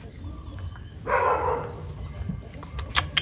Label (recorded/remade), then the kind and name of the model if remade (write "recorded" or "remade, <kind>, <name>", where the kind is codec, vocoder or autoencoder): recorded